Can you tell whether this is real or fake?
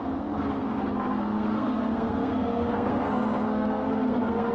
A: fake